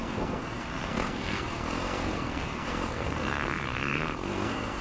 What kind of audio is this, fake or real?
fake